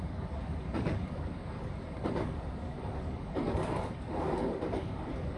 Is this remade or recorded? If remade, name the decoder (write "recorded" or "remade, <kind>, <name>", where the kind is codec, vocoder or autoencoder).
remade, codec, DAC